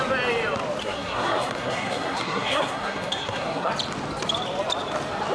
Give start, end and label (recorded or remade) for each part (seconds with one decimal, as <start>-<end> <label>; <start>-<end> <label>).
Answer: 0.0-0.8 recorded; 0.8-3.7 remade; 3.7-5.3 recorded